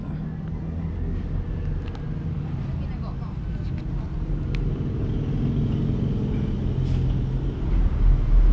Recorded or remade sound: recorded